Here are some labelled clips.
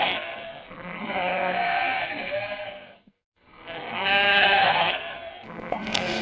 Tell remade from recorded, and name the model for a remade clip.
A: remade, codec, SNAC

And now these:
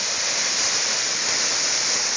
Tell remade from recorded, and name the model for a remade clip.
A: recorded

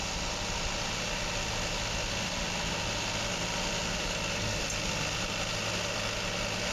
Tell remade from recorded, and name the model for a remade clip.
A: recorded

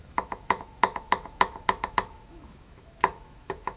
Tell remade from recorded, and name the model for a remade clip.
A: remade, autoencoder, DAC-VAE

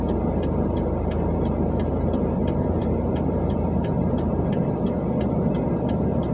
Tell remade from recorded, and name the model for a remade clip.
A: remade, vocoder, BigVGAN v2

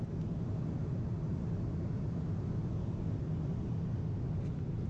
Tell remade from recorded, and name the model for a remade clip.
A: recorded